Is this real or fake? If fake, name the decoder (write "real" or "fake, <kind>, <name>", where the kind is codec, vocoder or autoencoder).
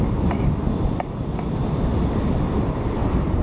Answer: real